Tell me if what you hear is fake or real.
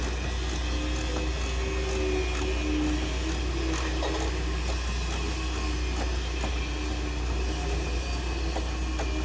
real